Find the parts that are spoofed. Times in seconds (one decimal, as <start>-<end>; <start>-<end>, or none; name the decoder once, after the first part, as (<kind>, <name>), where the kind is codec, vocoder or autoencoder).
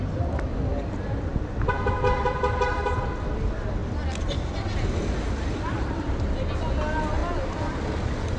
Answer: none